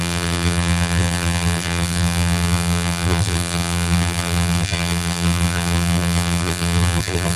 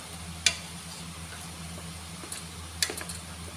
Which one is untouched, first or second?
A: second